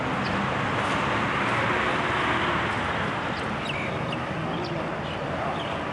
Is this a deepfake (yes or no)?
no